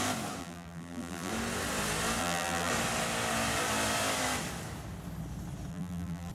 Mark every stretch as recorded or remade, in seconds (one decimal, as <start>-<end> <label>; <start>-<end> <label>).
0.0-0.4 recorded; 0.4-1.3 remade; 1.3-2.2 recorded; 2.2-2.7 remade; 2.7-5.7 recorded; 5.7-6.3 remade

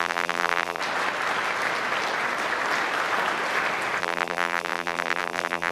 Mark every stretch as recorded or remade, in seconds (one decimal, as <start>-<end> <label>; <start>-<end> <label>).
0.0-0.8 remade; 0.8-4.0 recorded; 4.0-5.7 remade

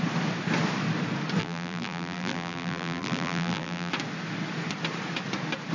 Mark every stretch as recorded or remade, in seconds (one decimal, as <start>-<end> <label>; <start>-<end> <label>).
0.0-1.4 recorded; 1.4-3.9 remade; 3.9-5.7 recorded

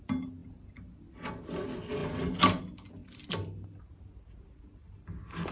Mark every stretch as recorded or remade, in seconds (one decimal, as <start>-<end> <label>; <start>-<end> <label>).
0.0-5.5 recorded

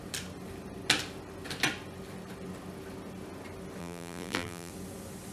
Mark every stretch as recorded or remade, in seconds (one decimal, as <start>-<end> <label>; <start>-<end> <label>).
0.0-3.8 recorded; 3.8-4.7 remade; 4.7-5.3 recorded

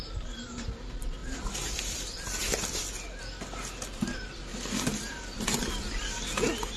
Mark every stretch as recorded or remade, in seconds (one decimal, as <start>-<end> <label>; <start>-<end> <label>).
0.0-1.2 recorded; 1.2-3.2 remade; 3.2-4.5 recorded; 4.5-6.3 remade; 6.3-6.8 recorded

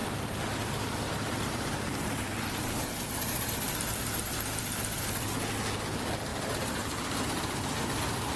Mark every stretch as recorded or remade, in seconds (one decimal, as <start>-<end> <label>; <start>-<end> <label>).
0.0-5.0 remade; 5.0-6.3 recorded; 6.3-6.8 remade; 6.8-8.4 recorded

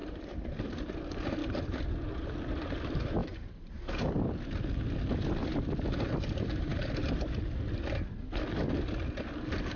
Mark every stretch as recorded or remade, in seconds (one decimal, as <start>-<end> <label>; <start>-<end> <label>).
0.0-0.7 remade; 0.7-3.2 recorded; 3.2-3.9 remade; 3.9-9.8 recorded